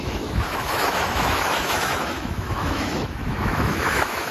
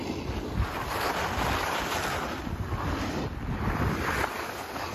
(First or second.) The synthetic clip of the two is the first